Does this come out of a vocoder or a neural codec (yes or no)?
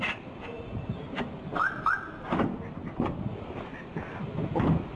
no